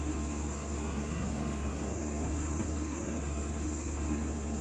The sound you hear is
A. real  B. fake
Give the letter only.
B